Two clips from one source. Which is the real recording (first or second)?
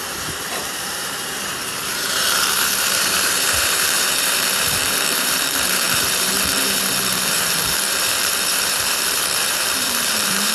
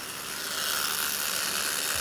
second